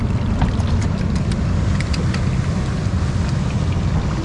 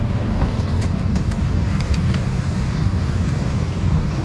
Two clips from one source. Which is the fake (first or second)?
second